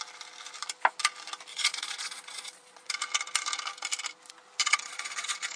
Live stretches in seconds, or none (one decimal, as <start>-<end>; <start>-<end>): 0.0-1.5; 2.9-4.6

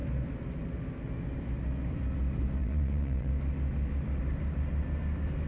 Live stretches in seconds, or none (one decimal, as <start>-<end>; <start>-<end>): 0.0-2.6; 3.3-5.5

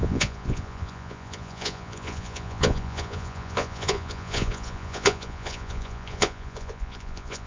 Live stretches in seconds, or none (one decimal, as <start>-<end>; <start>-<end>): none

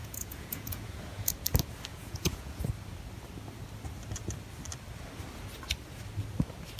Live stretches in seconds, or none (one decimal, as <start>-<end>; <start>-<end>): 1.3-1.9; 2.6-6.8

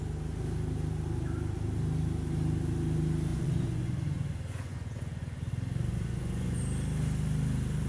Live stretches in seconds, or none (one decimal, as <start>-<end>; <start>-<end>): 0.0-3.3; 5.5-5.9; 6.6-7.9

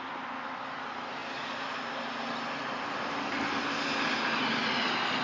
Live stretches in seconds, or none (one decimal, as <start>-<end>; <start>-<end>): 0.0-5.2

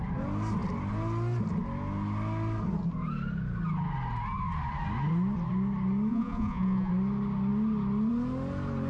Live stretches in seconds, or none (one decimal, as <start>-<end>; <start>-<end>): 0.0-6.1; 6.9-8.9